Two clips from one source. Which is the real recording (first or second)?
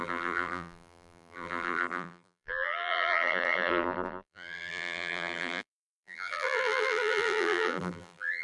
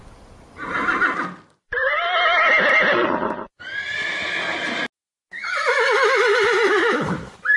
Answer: second